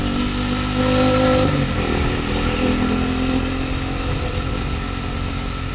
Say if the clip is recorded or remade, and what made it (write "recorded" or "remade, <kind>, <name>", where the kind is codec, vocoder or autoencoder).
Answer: recorded